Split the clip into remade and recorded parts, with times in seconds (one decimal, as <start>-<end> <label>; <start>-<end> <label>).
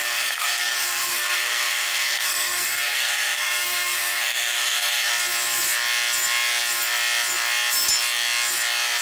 0.0-5.1 remade; 5.1-9.0 recorded